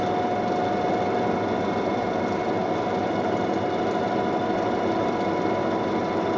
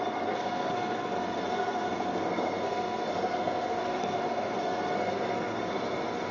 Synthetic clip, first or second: second